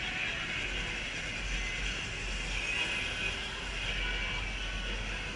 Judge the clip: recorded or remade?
recorded